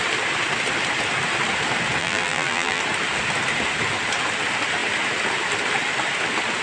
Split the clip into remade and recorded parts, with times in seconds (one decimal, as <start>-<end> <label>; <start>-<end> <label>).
0.0-2.0 recorded; 2.0-2.8 remade; 2.8-6.6 recorded